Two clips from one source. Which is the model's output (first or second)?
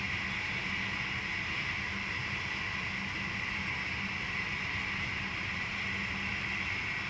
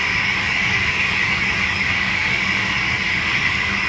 second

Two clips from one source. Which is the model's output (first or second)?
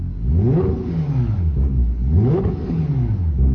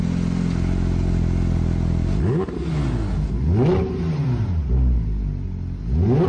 first